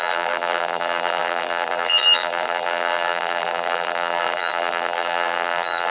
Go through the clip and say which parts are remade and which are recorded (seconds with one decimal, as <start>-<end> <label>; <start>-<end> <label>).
0.0-5.9 remade